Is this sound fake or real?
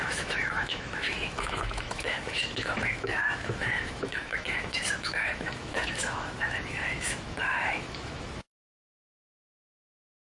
fake